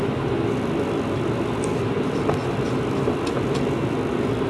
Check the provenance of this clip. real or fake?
real